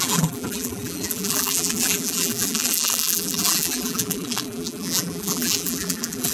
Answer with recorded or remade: remade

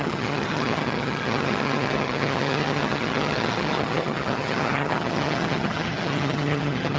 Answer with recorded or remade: remade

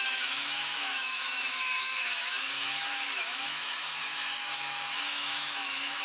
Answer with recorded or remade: remade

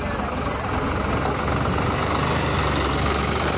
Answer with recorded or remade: recorded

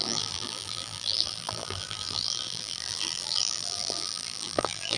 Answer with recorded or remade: remade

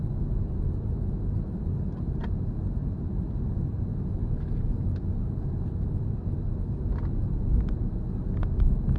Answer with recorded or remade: recorded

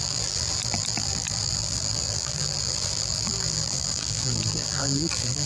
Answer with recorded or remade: remade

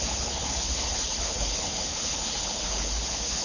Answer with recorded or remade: remade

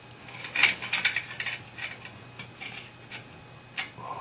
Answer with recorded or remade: recorded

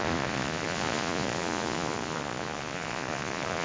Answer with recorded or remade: remade